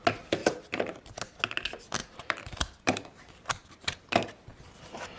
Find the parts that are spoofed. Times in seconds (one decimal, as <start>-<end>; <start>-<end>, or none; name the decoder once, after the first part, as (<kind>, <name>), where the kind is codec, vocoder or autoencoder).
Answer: 0.4-1.0 (vocoder, BigVGAN v2); 2.0-4.0